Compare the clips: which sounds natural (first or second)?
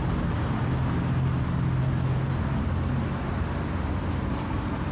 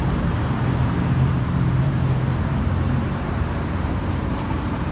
first